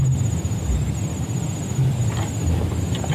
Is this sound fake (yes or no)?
no